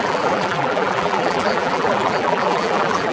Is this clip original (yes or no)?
no